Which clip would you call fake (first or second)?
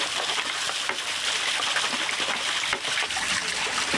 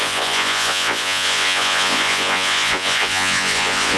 second